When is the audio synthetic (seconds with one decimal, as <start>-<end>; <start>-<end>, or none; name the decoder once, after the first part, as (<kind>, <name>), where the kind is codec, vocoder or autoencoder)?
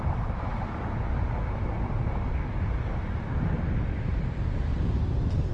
none